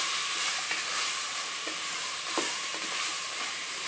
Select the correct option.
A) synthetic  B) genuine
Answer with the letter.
A